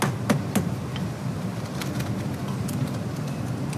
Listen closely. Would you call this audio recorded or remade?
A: recorded